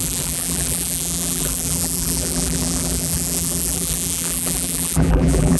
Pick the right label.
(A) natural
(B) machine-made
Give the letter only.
B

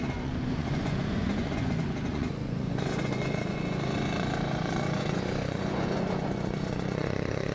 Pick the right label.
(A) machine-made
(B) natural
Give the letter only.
A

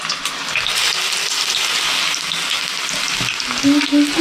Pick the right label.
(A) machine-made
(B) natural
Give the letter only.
B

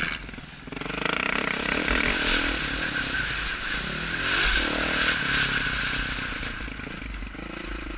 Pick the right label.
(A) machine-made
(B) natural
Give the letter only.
B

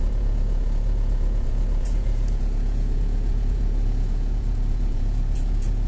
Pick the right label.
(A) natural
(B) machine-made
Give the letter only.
B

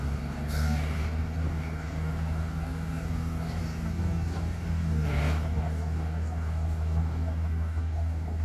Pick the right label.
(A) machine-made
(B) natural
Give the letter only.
A